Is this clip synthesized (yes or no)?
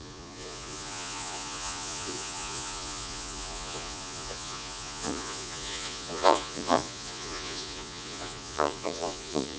yes